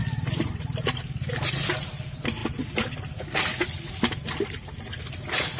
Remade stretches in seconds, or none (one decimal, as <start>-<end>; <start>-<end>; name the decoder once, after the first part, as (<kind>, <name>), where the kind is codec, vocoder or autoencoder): none